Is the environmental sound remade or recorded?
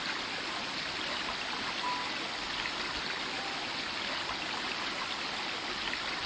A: recorded